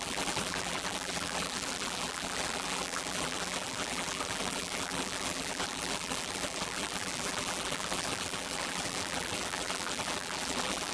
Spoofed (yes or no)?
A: yes